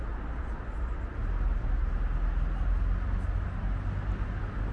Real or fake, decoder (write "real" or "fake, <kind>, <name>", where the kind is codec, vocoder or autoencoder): real